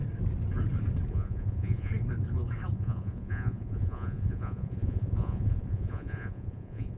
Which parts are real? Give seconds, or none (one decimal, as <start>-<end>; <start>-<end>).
0.0-1.1; 1.9-2.7